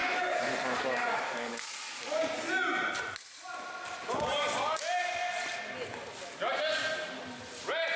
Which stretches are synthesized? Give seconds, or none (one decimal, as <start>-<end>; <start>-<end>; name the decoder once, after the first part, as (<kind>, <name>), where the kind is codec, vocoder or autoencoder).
0.0-2.2 (codec, DAC)

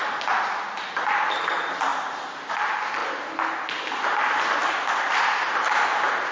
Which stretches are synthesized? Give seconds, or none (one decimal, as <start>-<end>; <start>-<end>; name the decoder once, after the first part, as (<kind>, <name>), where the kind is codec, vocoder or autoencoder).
none

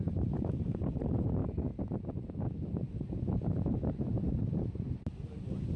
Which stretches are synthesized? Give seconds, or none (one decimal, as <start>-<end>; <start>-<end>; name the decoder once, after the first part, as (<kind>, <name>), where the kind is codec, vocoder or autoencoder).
0.0-1.4 (vocoder, BigVGAN v2); 2.9-5.8

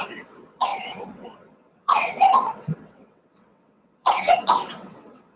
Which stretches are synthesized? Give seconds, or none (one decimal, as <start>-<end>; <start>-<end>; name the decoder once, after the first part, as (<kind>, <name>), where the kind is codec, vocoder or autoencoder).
0.0-5.4 (vocoder, WaveNeXt)

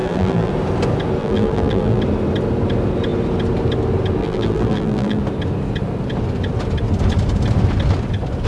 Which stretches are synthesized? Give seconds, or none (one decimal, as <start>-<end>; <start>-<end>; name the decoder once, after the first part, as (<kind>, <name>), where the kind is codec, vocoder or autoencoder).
0.0-0.5 (vocoder, BigVGAN v2); 1.2-2.0; 4.2-5.2